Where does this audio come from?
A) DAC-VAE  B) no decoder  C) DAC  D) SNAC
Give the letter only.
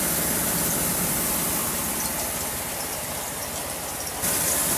B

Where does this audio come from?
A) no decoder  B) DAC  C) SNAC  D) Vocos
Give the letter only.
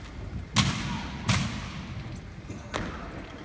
A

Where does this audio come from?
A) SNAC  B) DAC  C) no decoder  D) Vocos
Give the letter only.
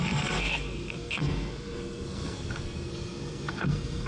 A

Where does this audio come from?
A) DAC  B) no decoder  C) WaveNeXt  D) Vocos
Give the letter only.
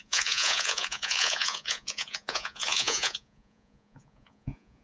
D